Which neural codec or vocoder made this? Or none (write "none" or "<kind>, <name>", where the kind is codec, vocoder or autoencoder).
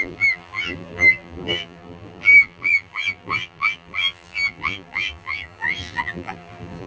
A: vocoder, BigVGAN v2